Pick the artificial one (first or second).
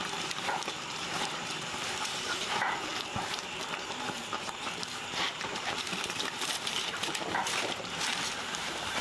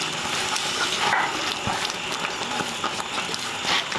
first